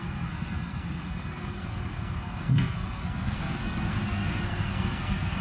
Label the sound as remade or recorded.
remade